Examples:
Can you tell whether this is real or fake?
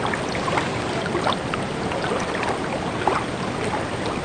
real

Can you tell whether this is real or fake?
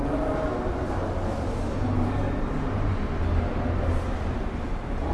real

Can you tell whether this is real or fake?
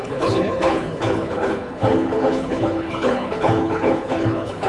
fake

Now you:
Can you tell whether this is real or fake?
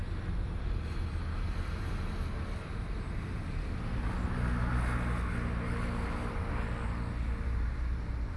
real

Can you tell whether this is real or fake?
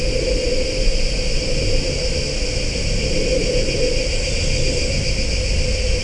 real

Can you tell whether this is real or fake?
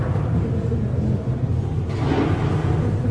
real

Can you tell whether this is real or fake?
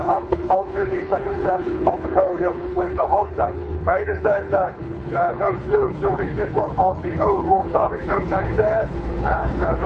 fake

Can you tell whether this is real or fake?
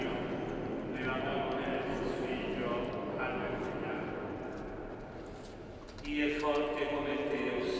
real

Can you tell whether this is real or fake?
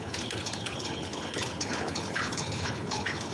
fake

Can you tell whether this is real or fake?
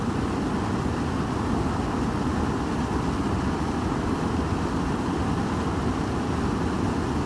real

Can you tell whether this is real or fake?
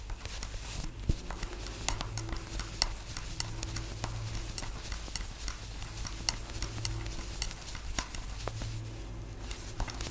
real